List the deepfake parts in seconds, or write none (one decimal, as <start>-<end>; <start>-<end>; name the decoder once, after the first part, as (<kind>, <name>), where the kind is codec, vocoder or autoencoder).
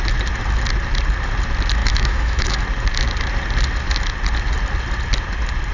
1.8-2.6 (autoencoder, DAC-VAE)